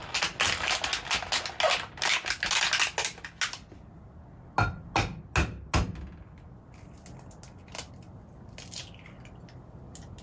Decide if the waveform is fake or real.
real